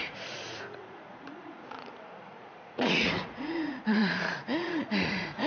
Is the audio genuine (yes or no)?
no